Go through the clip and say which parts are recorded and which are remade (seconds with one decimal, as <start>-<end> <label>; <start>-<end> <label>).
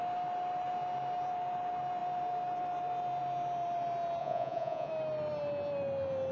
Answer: 0.0-4.2 recorded; 4.2-4.9 remade; 4.9-6.3 recorded